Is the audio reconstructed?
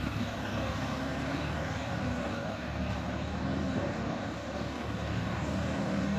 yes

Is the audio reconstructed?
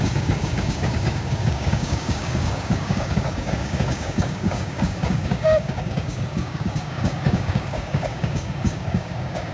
yes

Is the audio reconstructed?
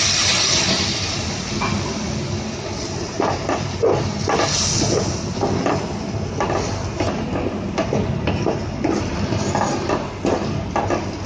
no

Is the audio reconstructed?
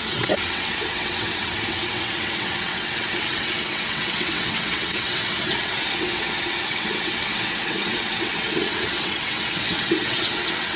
yes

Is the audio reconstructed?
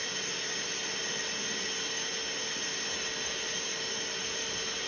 no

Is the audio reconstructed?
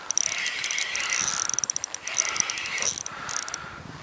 no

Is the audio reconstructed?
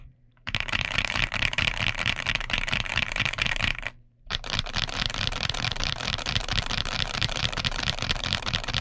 yes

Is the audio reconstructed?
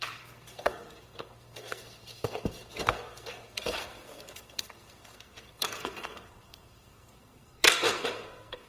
yes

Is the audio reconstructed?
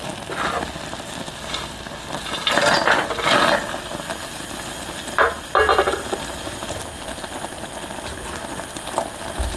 no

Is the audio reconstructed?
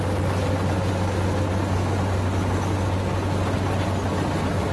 no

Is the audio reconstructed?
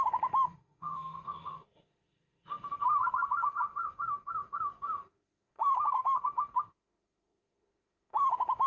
yes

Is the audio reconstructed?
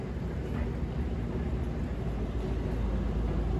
no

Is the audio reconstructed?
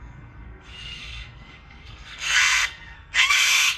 yes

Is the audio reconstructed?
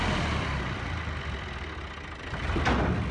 no